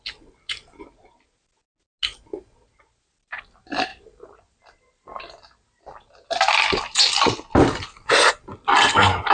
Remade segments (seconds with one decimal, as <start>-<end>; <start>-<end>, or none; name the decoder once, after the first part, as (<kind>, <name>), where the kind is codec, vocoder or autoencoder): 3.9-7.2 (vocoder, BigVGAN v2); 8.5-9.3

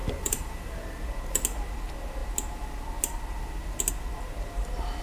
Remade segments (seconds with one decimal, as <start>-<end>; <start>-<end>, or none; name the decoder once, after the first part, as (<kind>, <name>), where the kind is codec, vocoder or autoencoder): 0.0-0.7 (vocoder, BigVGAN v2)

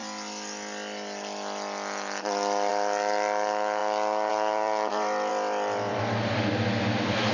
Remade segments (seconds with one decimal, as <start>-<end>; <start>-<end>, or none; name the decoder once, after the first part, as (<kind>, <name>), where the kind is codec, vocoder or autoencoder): 2.7-3.8 (vocoder, BigVGAN v2); 4.3-7.3

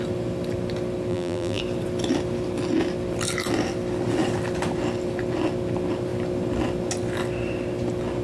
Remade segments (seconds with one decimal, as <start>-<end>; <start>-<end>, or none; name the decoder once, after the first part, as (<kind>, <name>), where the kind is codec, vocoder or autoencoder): 1.1-1.6 (vocoder, BigVGAN v2)

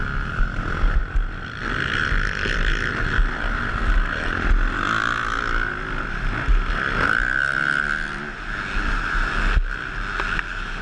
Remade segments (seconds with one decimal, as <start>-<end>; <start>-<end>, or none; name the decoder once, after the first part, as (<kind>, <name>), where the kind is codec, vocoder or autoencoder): none

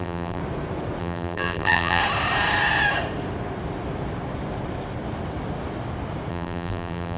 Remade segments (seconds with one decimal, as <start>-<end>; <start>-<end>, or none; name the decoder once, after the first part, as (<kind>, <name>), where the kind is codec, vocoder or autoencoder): 0.0-0.4 (vocoder, BigVGAN v2); 1.0-2.0; 6.3-7.2

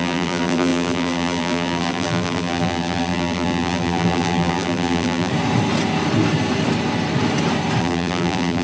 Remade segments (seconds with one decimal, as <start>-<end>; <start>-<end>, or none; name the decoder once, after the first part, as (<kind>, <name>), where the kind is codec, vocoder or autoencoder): 0.0-5.3 (vocoder, BigVGAN v2); 7.8-8.6

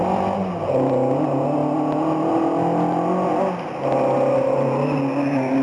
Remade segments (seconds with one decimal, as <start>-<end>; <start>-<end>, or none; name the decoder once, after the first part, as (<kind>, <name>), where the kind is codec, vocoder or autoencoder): none